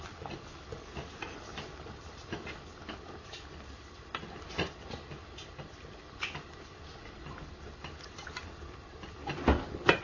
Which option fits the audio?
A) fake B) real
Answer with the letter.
B